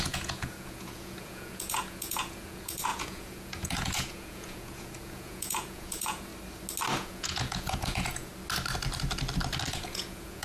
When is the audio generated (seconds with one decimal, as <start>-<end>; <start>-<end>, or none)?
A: 0.0-6.3; 6.9-8.3; 9.7-10.4